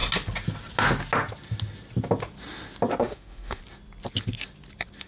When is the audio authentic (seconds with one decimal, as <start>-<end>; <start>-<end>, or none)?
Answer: 0.0-3.0; 3.6-5.1